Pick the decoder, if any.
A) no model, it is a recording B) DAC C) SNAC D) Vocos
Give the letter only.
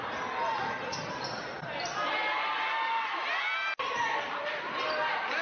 A